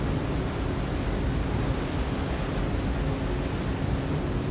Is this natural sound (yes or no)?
yes